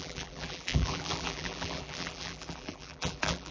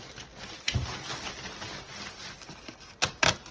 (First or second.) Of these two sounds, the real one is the second